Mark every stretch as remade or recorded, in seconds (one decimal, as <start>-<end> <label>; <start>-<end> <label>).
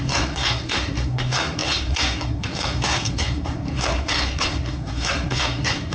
0.0-5.9 remade